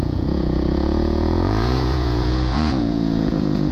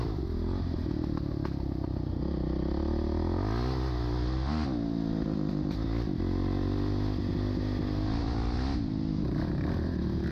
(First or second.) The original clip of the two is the second